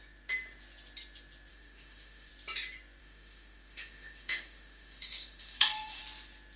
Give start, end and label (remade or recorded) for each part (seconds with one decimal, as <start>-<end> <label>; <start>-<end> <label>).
0.0-1.5 recorded; 1.5-2.3 remade; 2.3-3.0 recorded; 3.0-6.0 remade; 6.0-6.6 recorded